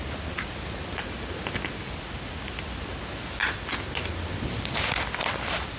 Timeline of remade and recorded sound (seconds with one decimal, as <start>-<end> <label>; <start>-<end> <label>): 0.0-5.8 recorded